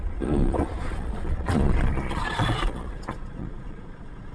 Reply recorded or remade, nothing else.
remade